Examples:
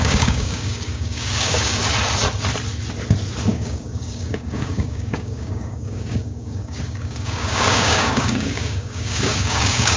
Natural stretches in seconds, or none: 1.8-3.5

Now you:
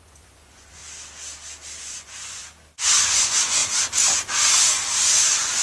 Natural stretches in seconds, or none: 0.8-1.8; 2.4-3.0; 3.6-5.0

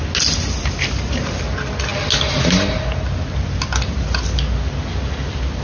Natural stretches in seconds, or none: 0.0-5.6

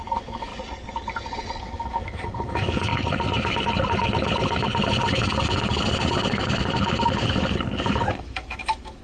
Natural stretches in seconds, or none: 0.5-1.6; 2.9-8.0